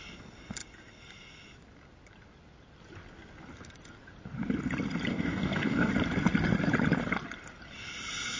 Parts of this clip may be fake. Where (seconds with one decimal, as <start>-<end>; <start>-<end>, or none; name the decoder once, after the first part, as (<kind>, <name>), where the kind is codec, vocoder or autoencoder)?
5.1-5.9 (codec, DAC)